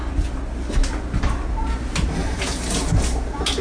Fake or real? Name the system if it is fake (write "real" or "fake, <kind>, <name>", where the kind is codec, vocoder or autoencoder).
real